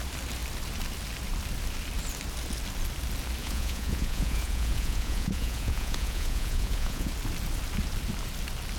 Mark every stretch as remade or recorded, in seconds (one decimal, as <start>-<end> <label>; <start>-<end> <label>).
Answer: 0.0-3.4 recorded; 3.4-7.1 remade; 7.1-8.8 recorded

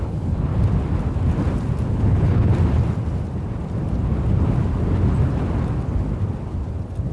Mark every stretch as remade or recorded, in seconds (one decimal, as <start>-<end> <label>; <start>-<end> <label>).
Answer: 0.0-0.5 remade; 0.5-1.9 recorded; 1.9-2.5 remade; 2.5-7.1 recorded